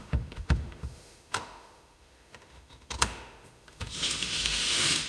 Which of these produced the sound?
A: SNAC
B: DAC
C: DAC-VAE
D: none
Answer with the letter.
C